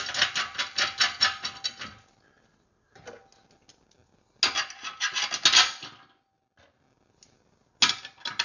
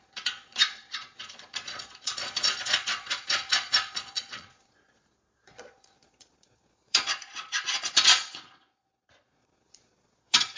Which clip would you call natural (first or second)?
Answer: first